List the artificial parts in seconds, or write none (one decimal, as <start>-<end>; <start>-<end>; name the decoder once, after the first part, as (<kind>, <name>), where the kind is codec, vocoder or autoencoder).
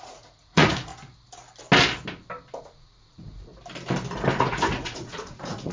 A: 0.0-0.9 (vocoder, Vocos); 2.6-3.5; 4.3-5.7